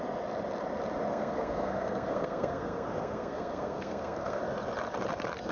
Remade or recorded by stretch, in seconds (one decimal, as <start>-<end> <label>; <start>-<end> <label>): 0.0-1.1 recorded; 1.1-4.4 remade; 4.4-5.5 recorded